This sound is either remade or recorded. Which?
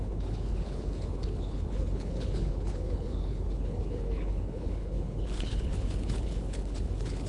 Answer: remade